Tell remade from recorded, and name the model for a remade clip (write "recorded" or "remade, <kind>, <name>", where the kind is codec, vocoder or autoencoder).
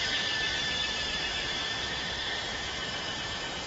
remade, autoencoder, DAC-VAE